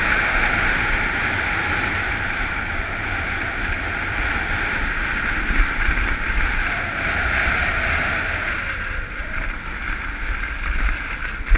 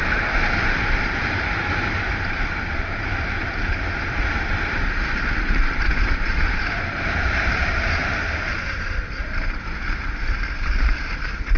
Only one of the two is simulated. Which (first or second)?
second